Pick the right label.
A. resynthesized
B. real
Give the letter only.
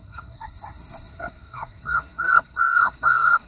A